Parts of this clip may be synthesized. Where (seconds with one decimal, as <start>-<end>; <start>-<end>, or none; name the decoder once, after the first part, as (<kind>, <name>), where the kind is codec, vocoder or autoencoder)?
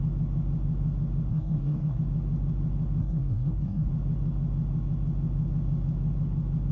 1.3-2.0 (codec, SNAC); 3.0-3.9